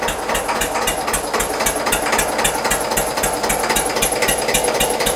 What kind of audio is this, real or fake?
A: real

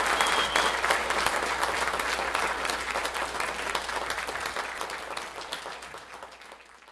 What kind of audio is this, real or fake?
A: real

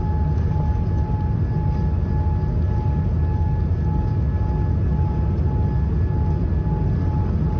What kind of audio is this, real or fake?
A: real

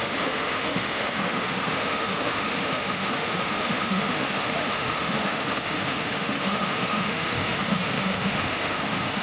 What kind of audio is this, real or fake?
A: fake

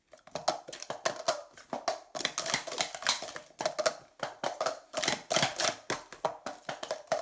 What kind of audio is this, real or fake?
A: real